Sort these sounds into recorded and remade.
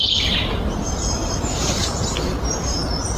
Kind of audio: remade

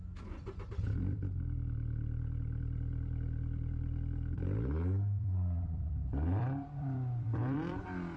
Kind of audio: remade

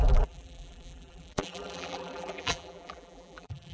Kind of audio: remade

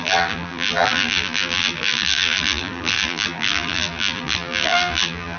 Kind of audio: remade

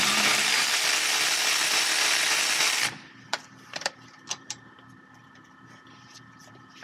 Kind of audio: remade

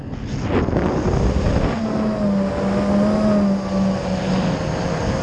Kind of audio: recorded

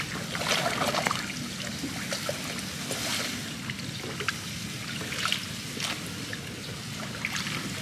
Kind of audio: recorded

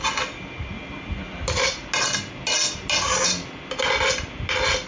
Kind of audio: recorded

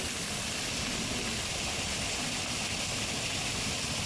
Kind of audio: recorded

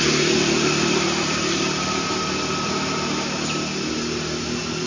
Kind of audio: remade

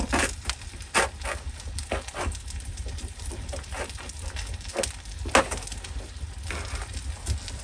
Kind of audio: recorded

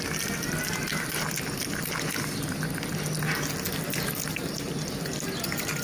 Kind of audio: recorded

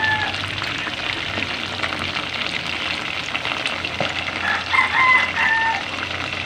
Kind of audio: recorded